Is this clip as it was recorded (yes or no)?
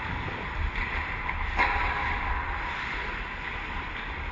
yes